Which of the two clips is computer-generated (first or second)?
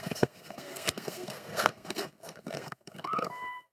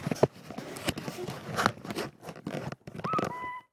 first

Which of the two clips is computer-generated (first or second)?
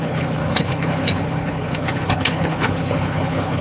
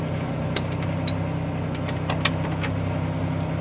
first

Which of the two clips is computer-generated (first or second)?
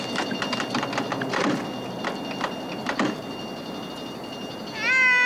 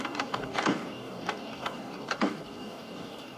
second